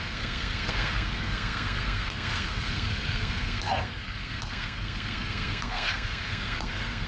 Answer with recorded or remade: remade